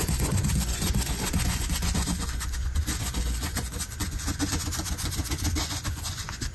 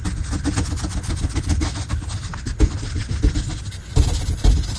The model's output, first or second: first